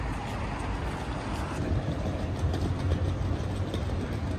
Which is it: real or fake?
real